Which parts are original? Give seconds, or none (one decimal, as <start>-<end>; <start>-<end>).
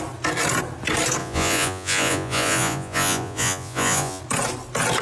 0.0-1.2; 4.2-5.0